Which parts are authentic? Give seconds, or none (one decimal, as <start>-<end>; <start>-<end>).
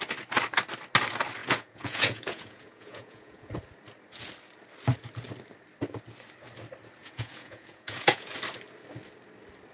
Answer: 0.0-1.4; 3.5-7.0; 8.3-9.7